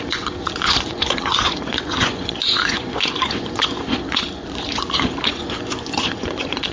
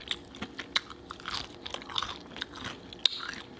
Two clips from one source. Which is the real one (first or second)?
second